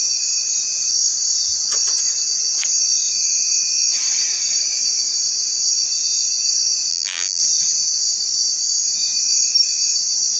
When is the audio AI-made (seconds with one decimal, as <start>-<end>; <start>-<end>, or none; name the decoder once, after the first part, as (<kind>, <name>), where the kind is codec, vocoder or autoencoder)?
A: 6.9-7.4 (vocoder, BigVGAN v2)